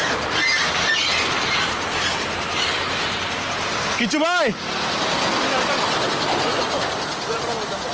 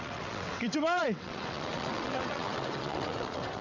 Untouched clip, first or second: first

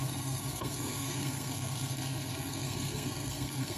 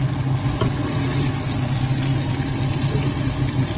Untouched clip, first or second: second